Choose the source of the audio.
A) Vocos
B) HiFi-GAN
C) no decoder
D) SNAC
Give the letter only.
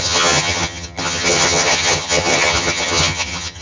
B